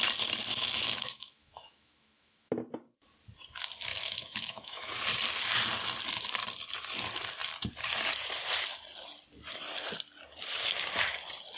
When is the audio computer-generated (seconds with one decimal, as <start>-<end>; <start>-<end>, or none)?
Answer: 0.5-2.5; 3.9-4.9